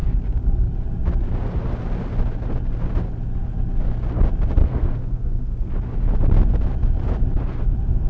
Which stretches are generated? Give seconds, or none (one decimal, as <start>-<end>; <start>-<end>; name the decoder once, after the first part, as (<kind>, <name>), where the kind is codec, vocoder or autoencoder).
4.6-5.7 (codec, SNAC)